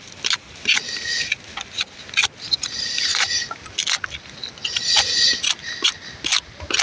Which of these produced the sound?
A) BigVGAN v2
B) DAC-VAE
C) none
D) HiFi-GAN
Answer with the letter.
C